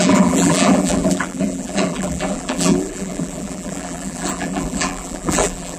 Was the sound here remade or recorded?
remade